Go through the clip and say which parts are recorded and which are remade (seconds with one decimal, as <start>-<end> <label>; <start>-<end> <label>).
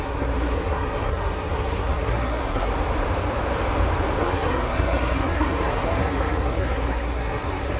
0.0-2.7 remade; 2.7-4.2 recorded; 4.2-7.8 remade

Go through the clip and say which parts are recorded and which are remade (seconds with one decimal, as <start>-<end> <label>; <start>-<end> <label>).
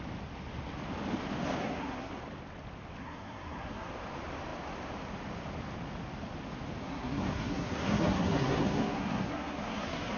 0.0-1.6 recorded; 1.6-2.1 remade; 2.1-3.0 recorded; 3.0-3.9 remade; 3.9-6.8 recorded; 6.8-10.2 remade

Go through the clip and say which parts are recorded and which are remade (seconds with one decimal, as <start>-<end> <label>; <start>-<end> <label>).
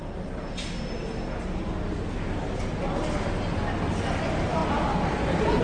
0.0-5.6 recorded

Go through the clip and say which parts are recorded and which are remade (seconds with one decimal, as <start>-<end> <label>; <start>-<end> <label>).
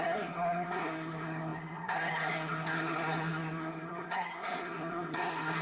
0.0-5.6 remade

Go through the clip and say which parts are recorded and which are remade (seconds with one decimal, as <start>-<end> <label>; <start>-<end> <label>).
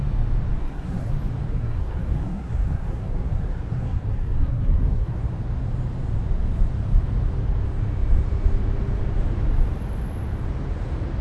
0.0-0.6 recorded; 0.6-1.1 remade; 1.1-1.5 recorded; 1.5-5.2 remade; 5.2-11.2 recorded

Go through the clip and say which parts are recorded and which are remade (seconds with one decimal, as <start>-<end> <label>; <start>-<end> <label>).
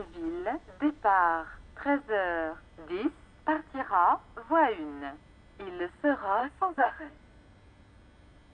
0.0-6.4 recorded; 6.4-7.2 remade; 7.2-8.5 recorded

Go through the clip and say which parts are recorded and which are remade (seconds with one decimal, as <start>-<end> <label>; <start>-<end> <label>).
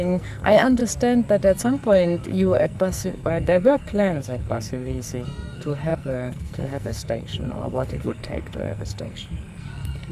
0.0-0.8 remade; 0.8-1.6 recorded; 1.6-10.1 remade